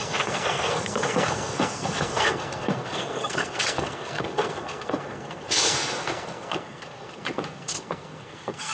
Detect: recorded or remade remade